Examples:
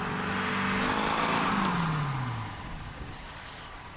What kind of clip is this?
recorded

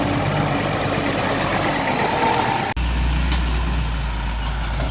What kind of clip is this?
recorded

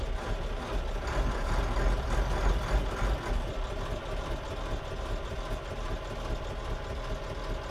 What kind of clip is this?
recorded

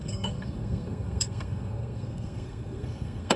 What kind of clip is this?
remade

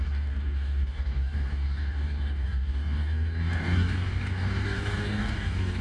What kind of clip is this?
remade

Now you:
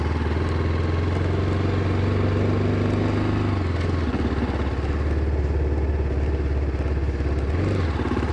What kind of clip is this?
recorded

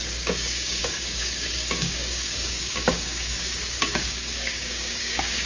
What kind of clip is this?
remade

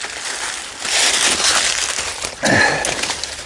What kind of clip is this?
recorded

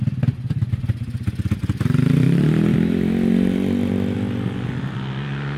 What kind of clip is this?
remade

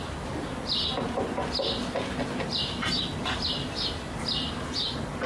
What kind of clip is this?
recorded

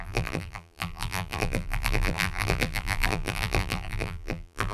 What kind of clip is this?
remade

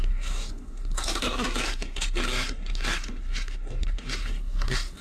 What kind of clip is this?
remade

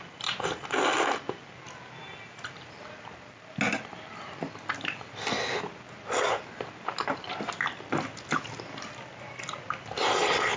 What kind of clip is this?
recorded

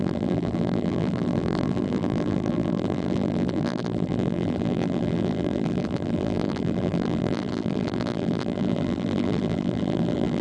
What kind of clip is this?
remade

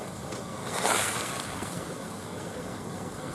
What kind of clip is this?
remade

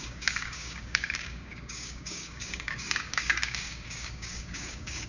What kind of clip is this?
remade